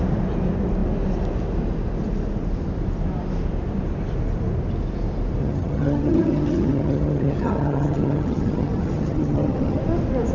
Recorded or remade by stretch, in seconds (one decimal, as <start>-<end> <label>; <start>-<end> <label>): 0.0-5.4 recorded; 5.4-9.8 remade; 9.8-10.3 recorded